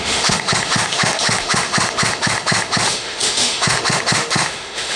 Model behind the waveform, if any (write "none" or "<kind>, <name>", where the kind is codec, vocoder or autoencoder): autoencoder, DAC-VAE